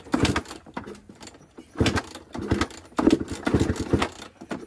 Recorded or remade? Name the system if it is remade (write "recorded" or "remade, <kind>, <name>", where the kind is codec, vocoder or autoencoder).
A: recorded